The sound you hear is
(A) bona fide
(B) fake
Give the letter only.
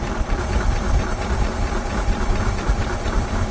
A